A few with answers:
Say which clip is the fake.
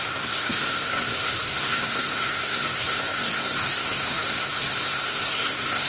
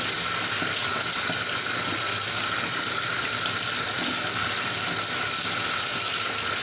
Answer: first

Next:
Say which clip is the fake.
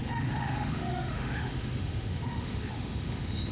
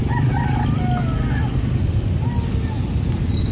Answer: first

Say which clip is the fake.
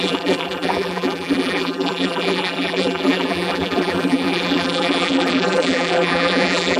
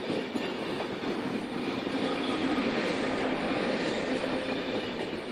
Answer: first